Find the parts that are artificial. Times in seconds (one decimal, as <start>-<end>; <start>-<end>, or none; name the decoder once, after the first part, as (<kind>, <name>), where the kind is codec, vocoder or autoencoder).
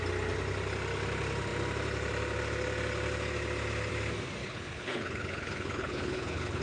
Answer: 4.4-6.6 (codec, HILCodec)